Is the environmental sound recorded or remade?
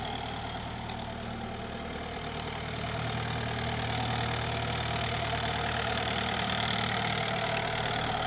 recorded